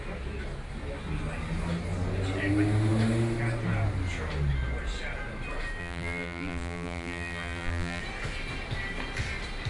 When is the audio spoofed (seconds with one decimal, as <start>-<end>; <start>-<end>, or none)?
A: 5.8-8.0